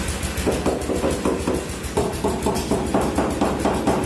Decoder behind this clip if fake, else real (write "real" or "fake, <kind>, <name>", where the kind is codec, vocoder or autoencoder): real